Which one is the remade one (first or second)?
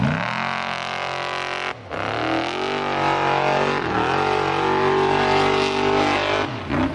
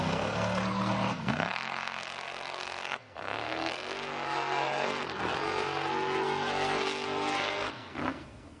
second